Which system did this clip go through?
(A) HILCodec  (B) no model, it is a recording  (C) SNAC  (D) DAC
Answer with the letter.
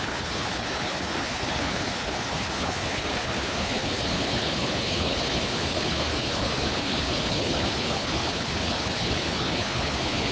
A